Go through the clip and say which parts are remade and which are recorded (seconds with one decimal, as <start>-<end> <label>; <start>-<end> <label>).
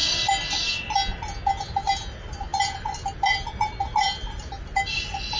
0.0-2.5 recorded; 2.5-4.6 remade; 4.6-5.4 recorded